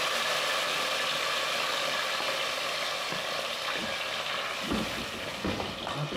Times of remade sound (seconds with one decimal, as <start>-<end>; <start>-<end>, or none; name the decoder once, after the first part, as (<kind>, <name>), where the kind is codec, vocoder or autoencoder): none